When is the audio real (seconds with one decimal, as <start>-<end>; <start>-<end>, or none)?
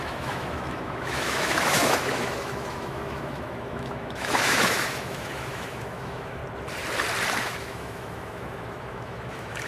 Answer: 6.4-7.4